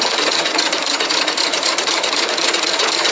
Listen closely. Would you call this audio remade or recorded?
remade